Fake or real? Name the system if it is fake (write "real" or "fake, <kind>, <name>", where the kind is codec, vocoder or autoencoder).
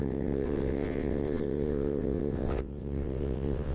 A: fake, vocoder, WaveNeXt